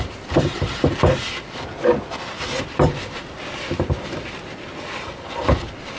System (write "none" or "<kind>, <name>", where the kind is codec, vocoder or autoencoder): none